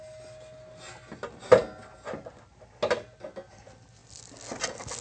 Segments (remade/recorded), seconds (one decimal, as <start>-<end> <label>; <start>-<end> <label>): 0.0-5.0 recorded